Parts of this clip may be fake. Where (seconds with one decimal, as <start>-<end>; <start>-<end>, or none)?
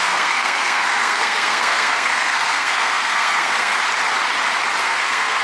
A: 0.0-3.7; 4.8-5.4